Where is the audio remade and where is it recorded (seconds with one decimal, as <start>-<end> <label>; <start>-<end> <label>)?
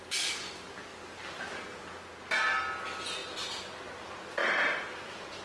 0.0-5.4 recorded